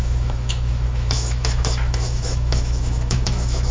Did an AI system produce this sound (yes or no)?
yes